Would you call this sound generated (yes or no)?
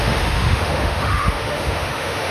yes